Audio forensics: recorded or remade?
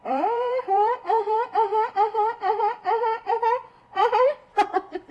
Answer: remade